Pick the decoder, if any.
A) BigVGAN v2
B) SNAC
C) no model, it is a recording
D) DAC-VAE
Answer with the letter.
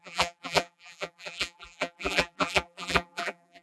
A